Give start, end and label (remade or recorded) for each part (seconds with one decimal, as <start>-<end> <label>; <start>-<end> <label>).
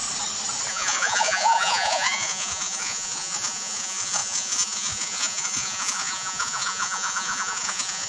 0.0-0.7 recorded; 0.7-8.1 remade